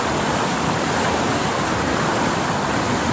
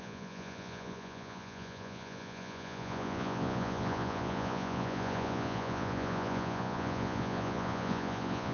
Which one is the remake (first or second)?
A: second